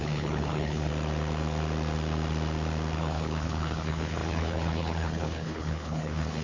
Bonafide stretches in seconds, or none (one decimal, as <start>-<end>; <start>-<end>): 0.9-3.0